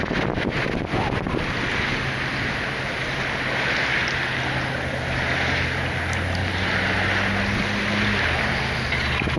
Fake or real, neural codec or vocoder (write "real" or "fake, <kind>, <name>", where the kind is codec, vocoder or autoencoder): real